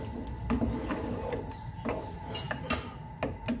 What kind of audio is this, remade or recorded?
recorded